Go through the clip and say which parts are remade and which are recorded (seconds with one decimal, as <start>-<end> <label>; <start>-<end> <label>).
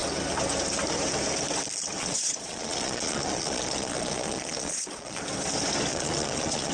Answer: 0.0-2.0 recorded; 2.0-5.2 remade; 5.2-5.9 recorded; 5.9-6.7 remade